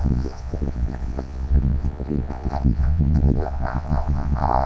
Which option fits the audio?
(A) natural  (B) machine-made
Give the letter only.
B